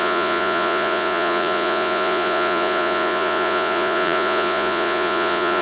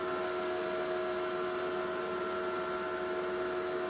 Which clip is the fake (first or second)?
first